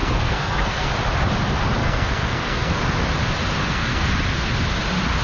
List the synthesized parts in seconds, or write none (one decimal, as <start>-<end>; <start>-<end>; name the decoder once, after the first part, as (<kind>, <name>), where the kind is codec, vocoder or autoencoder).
0.0-0.9 (codec, SNAC); 1.8-2.8; 3.6-4.1

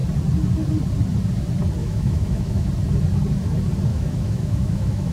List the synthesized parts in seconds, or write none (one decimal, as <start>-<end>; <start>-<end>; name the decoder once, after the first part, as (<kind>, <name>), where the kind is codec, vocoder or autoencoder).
1.8-2.7 (autoencoder, DAC-VAE); 3.9-5.1

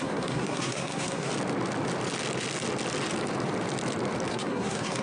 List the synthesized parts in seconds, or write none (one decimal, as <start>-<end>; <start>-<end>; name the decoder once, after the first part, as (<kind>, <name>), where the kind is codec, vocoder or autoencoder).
0.0-1.3 (codec, SNAC); 4.3-5.0

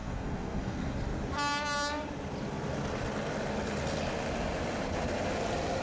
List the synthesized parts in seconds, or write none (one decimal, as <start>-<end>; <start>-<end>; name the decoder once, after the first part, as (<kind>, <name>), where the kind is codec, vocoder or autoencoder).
0.0-0.9 (codec, SNAC)

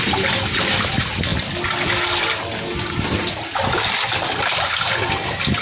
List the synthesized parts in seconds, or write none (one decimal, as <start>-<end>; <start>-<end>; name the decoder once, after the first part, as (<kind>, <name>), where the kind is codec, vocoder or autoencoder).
none

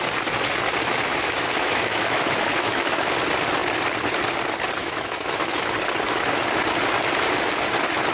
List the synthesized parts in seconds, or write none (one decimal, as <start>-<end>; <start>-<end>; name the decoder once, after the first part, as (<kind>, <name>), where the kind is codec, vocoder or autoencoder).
1.1-3.1 (autoencoder, DAC-VAE); 4.8-5.7